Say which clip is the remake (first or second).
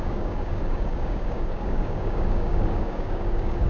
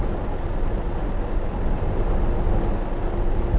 first